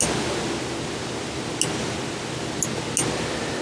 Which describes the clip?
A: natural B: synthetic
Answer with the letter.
A